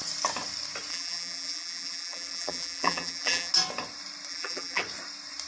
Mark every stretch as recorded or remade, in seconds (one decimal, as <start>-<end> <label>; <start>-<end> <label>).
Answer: 0.0-0.9 recorded; 0.9-3.5 remade; 3.5-4.3 recorded; 4.3-4.8 remade; 4.8-5.5 recorded